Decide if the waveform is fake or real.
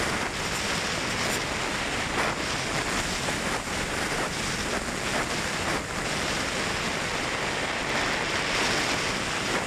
real